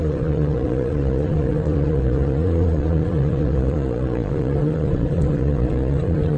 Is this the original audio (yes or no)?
no